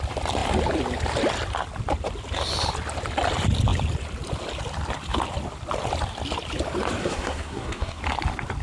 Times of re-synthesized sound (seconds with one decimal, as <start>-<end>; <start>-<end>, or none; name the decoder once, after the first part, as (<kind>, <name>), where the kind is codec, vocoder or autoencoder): 7.0-8.0 (codec, SNAC)